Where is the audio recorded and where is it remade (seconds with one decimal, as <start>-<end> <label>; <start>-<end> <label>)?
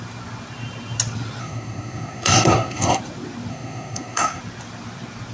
0.0-1.4 recorded; 1.4-3.0 remade; 3.0-3.5 recorded; 3.5-4.4 remade; 4.4-5.3 recorded